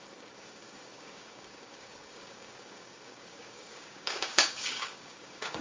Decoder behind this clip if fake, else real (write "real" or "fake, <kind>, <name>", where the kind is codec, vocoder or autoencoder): fake, codec, DAC